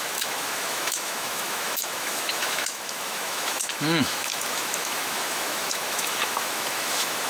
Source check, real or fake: fake